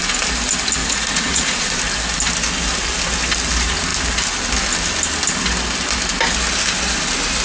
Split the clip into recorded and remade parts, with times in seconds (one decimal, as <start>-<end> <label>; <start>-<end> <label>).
0.0-0.8 recorded; 0.8-1.8 remade; 1.8-7.4 recorded